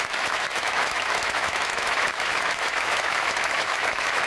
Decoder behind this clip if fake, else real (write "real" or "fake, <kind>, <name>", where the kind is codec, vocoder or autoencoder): fake, autoencoder, DAC-VAE